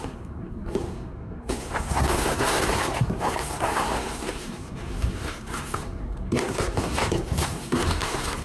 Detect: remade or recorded remade